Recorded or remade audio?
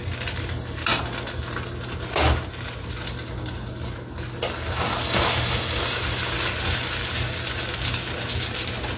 recorded